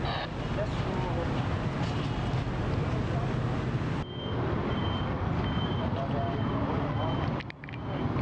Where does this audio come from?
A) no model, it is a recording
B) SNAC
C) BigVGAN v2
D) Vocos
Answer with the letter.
A